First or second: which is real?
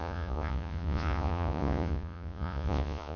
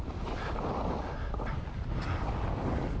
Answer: second